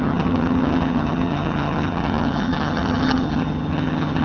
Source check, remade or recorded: remade